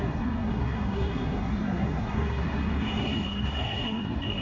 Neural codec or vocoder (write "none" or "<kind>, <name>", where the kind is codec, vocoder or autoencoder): codec, SNAC